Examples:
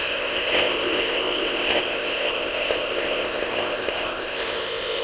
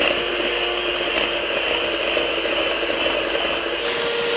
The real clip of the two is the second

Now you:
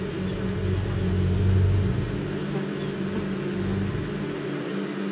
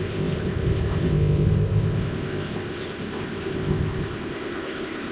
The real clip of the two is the first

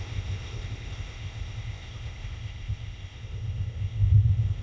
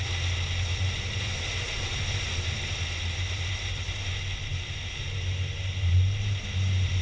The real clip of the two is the second